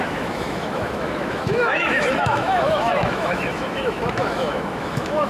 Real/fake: fake